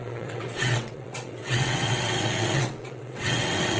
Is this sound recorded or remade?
remade